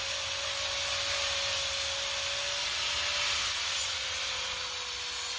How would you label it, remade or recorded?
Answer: recorded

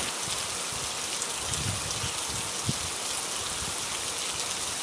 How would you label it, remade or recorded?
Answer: recorded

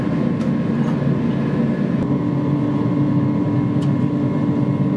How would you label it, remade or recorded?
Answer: recorded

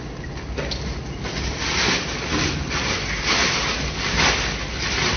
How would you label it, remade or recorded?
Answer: recorded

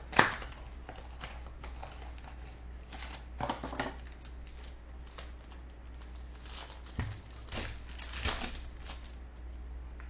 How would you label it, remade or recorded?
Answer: recorded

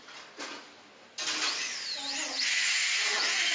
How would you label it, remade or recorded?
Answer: recorded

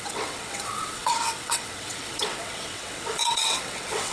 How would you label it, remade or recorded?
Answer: remade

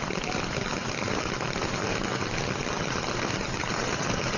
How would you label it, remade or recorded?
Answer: recorded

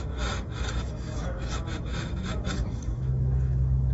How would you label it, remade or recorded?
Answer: remade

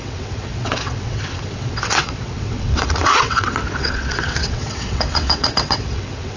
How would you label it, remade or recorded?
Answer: remade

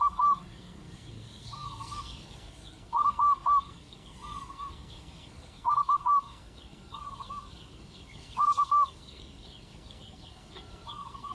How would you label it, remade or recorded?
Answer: remade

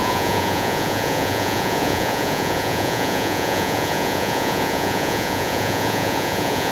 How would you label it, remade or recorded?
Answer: remade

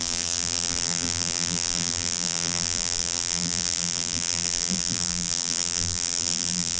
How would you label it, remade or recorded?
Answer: remade